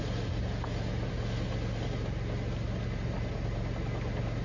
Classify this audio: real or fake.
real